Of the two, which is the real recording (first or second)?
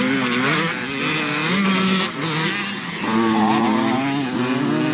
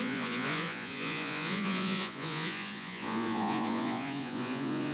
first